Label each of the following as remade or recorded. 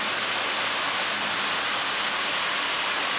recorded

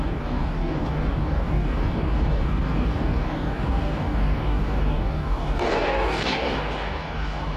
remade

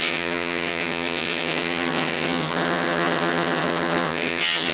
remade